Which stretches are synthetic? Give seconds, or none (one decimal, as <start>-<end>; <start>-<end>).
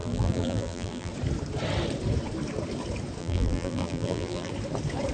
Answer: 0.0-1.1; 3.2-4.5